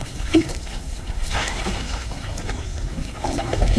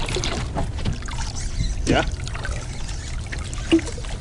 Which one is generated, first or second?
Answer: first